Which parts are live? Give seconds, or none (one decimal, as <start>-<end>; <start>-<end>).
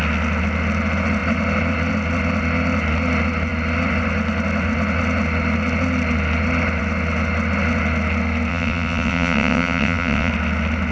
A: 0.0-8.5; 10.3-10.9